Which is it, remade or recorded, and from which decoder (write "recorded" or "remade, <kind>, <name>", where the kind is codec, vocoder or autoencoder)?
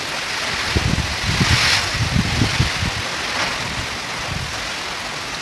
recorded